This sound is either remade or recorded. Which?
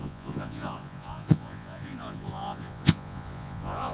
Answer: remade